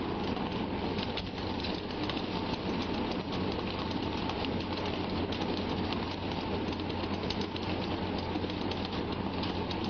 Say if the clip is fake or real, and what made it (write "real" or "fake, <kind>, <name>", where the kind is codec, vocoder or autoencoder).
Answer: real